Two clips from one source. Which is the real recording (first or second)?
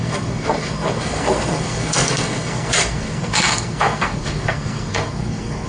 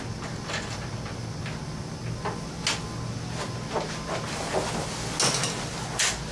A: second